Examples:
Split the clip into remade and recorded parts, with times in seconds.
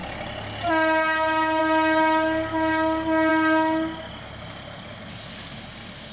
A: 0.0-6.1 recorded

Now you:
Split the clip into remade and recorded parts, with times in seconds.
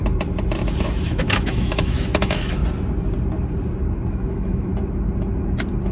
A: 0.0-1.0 recorded; 1.0-2.6 remade; 2.6-4.1 recorded; 4.1-4.7 remade; 4.7-5.9 recorded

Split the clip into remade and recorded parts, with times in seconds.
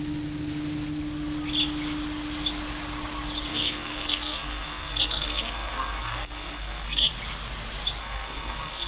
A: 0.0-3.5 recorded; 3.5-7.1 remade; 7.1-8.0 recorded; 8.0-8.9 remade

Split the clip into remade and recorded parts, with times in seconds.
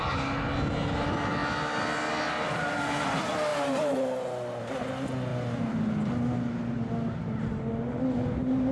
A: 0.0-8.7 recorded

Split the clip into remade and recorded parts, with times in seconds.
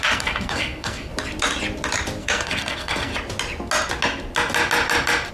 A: 0.0-1.1 remade; 1.1-2.2 recorded; 2.2-3.1 remade; 3.1-5.3 recorded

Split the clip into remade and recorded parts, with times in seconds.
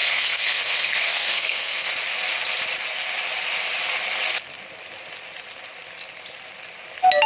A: 0.0-1.9 remade; 1.9-7.3 recorded